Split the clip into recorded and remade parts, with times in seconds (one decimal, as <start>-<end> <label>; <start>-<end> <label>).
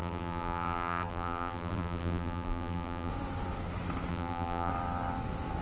0.0-3.1 remade; 3.1-4.1 recorded; 4.1-4.7 remade; 4.7-5.6 recorded